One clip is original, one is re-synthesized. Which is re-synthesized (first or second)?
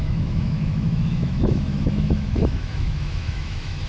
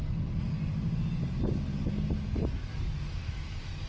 first